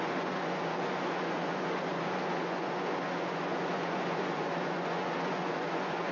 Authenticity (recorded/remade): remade